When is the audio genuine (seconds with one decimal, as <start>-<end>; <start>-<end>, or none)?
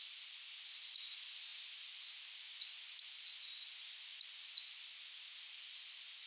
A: 0.0-6.3